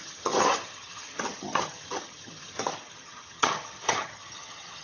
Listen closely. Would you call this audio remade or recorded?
remade